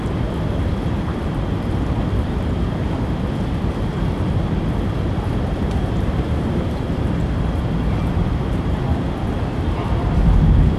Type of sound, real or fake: fake